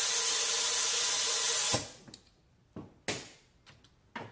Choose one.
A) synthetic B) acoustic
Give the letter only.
B